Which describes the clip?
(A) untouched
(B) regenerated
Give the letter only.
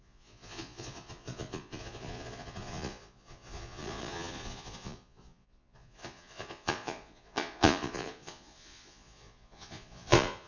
B